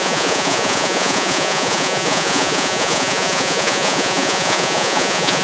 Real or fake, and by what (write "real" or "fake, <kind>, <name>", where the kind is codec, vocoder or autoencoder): fake, vocoder, Vocos